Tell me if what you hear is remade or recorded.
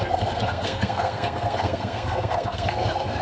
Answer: remade